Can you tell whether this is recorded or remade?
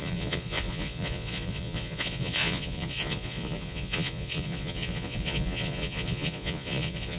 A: remade